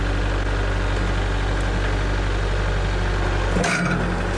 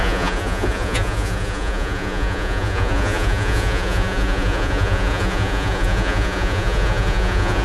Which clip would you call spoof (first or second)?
second